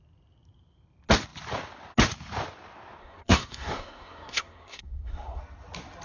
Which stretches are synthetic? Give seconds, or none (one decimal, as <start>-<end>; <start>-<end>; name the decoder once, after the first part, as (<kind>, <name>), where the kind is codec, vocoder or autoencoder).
3.0-5.4 (codec, SNAC)